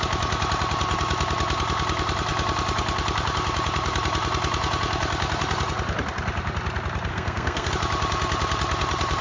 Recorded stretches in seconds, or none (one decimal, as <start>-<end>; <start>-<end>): 0.0-7.1; 7.7-9.2